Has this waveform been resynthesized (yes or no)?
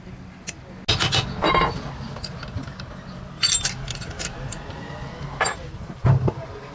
no